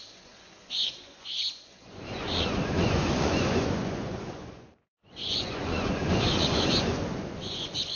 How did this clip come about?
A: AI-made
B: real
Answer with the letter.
A